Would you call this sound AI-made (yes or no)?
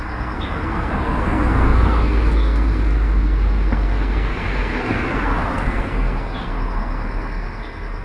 yes